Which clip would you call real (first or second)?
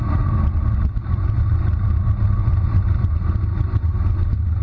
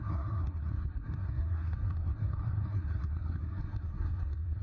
first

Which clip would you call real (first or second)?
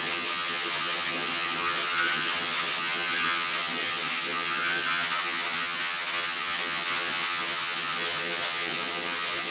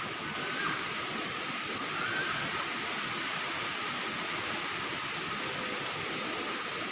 second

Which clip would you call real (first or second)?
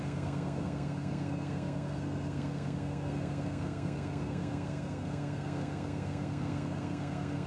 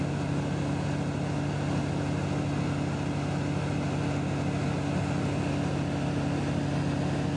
second